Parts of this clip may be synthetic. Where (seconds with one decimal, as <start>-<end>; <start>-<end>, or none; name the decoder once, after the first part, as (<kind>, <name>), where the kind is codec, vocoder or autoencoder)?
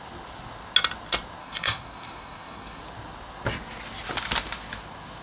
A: 1.4-2.8 (codec, DAC)